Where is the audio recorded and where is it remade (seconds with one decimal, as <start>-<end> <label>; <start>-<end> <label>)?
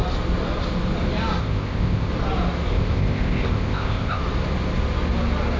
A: 0.0-1.4 recorded; 1.4-2.1 remade; 2.1-2.7 recorded; 2.7-4.2 remade; 4.2-5.6 recorded